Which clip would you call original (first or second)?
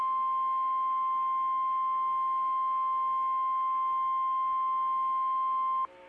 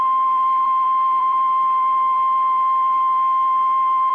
first